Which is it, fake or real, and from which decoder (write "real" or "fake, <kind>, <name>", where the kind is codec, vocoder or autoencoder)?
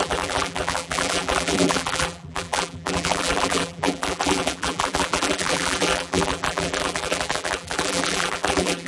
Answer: fake, vocoder, BigVGAN v2